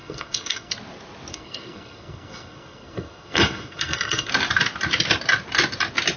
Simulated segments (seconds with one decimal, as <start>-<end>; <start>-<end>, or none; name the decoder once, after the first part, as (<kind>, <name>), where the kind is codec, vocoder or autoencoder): 0.0-0.7 (codec, SNAC); 1.3-4.3